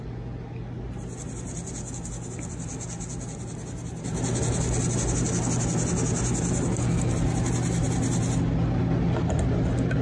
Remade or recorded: recorded